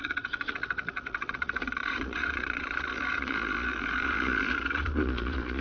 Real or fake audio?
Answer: fake